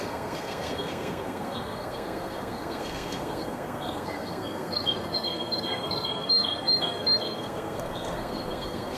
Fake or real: fake